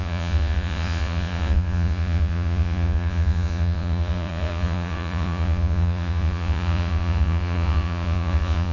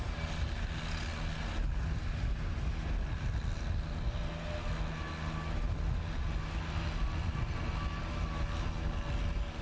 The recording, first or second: second